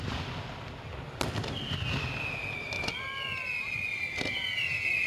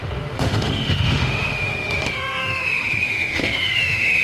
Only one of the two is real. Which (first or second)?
first